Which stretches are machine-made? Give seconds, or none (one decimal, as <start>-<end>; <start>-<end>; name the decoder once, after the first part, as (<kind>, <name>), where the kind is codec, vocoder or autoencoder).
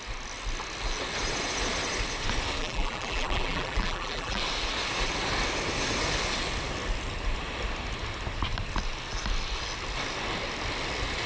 2.6-4.4 (vocoder, BigVGAN v2)